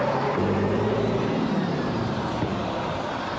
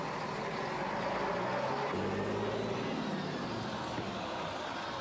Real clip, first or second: second